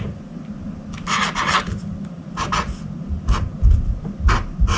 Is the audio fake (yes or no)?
no